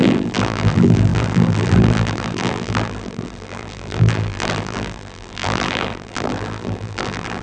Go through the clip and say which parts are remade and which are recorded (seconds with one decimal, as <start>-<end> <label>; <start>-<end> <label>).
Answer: 0.0-7.4 remade